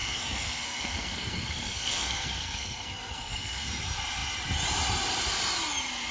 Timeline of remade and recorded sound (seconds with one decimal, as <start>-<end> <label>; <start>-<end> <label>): 0.0-3.7 remade; 3.7-6.1 recorded